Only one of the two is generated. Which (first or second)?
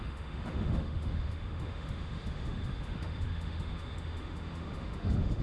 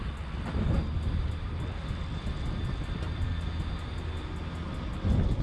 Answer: first